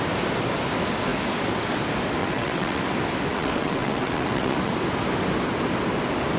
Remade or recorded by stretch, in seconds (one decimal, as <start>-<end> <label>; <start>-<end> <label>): 0.0-2.2 recorded; 2.2-2.8 remade; 2.8-3.3 recorded; 3.3-4.7 remade; 4.7-6.4 recorded